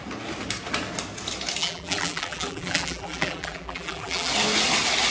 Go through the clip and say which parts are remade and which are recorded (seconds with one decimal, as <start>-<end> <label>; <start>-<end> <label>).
0.0-1.6 recorded; 1.6-4.3 remade; 4.3-5.1 recorded